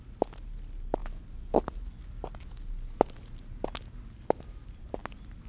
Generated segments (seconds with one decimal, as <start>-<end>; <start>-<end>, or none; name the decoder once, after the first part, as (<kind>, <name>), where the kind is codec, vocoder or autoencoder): none